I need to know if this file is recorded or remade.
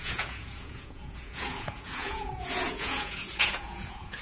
remade